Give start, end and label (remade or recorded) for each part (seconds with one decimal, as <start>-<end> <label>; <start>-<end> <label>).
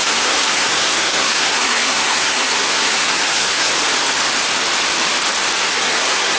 0.0-3.7 remade; 3.7-5.7 recorded; 5.7-6.4 remade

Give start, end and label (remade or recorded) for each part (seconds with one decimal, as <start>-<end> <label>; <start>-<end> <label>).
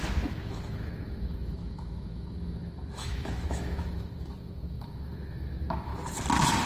0.0-5.9 remade; 5.9-6.7 recorded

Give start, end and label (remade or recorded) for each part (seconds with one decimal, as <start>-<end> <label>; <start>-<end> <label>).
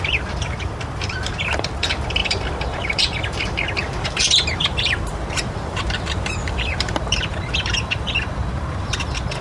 0.0-9.4 remade